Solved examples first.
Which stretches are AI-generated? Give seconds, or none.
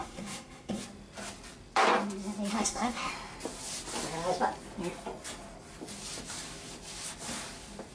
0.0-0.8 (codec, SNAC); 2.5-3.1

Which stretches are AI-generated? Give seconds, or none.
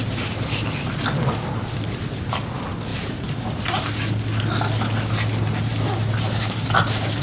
2.9-4.1 (vocoder, BigVGAN v2)